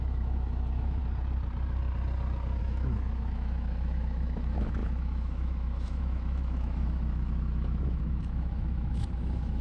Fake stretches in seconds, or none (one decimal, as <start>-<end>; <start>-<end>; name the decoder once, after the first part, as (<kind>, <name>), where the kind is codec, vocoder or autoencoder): 0.0-1.0 (autoencoder, DAC-VAE); 2.6-9.6